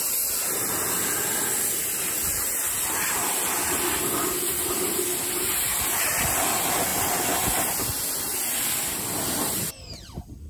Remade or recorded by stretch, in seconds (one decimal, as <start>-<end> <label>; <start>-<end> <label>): 0.0-2.6 recorded; 2.6-3.1 remade; 3.1-10.5 recorded